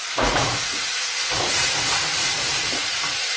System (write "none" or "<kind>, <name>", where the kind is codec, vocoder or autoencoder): vocoder, Vocos